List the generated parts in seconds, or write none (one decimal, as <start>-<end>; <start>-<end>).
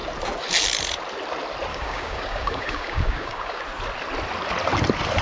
1.7-3.6